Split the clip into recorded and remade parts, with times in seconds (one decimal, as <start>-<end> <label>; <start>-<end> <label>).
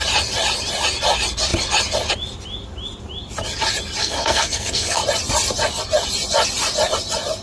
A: 0.0-4.0 recorded; 4.0-5.0 remade; 5.0-7.4 recorded